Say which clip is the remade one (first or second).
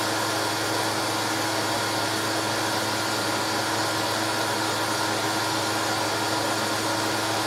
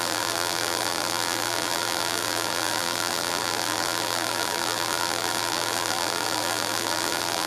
second